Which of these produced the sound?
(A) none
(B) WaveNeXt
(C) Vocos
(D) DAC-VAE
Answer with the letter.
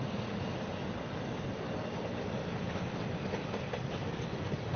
A